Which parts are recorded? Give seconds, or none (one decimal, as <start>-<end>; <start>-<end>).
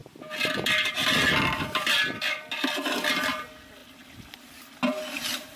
0.0-5.6